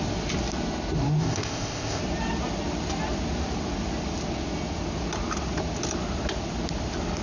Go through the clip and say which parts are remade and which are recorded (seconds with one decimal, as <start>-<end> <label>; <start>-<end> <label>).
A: 0.0-1.2 recorded; 1.2-2.0 remade; 2.0-7.2 recorded